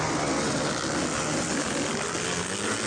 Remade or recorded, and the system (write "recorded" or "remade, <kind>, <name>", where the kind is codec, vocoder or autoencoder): recorded